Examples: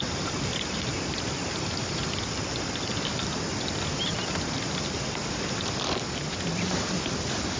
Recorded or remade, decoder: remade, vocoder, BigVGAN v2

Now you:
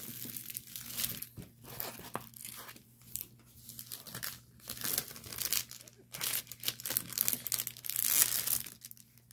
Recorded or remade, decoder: recorded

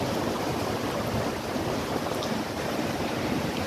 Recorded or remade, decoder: remade, vocoder, BigVGAN v2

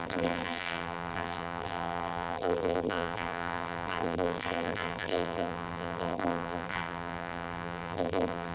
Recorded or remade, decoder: remade, vocoder, BigVGAN v2